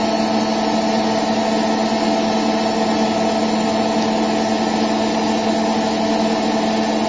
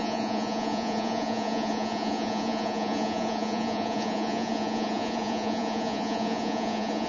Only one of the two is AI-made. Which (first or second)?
second